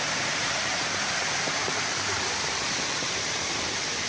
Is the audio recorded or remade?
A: remade